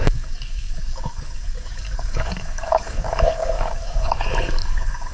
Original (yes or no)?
no